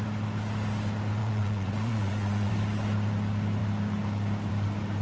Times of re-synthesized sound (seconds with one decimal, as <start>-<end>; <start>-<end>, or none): 1.2-2.5